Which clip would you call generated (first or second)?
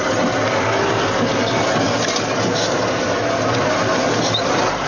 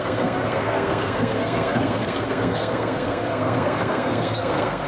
second